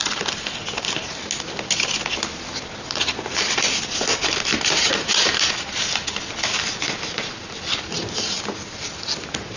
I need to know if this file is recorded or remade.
recorded